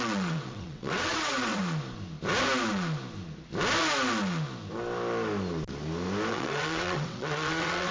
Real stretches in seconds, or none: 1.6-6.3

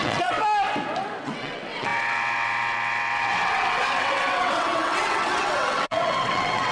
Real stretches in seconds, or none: 0.4-1.2

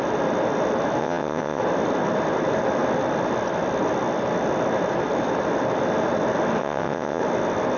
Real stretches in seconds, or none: 0.0-1.0; 1.6-6.6; 7.2-7.8

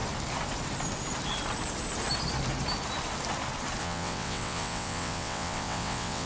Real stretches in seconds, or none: 0.0-3.8

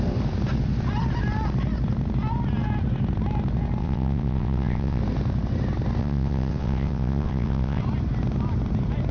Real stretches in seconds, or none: 0.0-3.8; 5.0-6.0; 7.8-9.1

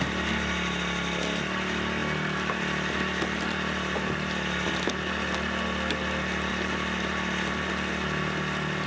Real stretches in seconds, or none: 0.0-8.9

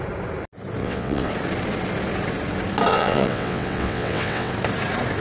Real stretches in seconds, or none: 0.0-0.8; 1.3-2.9; 4.5-5.2